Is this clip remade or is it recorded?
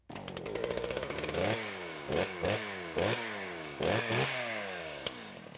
remade